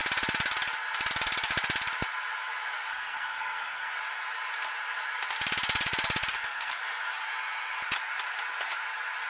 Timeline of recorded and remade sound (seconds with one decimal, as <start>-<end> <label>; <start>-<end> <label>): 0.0-2.9 recorded; 2.9-3.9 remade; 3.9-6.3 recorded; 6.3-6.8 remade; 6.8-9.3 recorded